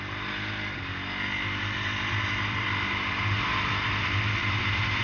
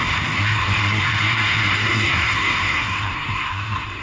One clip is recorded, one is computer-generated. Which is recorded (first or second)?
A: first